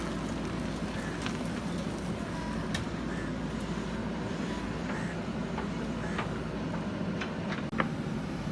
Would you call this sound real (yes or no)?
yes